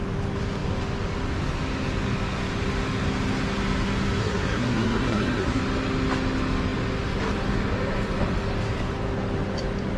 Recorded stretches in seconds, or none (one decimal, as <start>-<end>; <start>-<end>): 0.0-4.2; 5.6-10.0